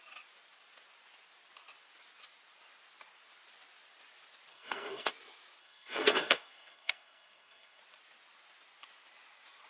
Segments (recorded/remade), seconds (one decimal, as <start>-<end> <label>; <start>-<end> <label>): 0.0-4.5 recorded; 4.5-5.1 remade; 5.1-5.6 recorded; 5.6-7.8 remade; 7.8-9.7 recorded